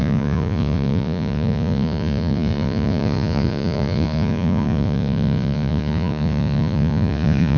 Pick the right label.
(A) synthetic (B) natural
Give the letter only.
A